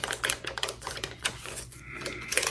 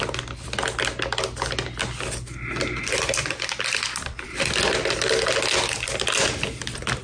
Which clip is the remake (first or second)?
first